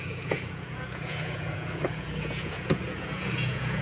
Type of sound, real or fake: fake